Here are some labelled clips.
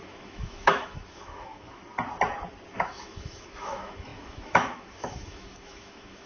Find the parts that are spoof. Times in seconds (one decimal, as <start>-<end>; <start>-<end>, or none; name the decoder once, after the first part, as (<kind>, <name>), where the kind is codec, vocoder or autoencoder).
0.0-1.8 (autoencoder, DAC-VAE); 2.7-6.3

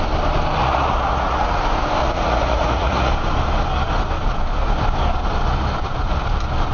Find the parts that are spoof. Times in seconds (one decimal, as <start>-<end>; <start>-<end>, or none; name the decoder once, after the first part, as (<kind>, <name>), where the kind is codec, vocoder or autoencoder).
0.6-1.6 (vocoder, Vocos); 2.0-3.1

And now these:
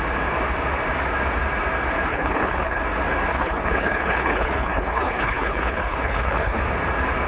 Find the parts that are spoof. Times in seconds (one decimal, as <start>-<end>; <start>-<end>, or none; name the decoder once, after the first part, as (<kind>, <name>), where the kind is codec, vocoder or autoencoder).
2.1-2.8 (codec, HILCodec); 3.3-6.6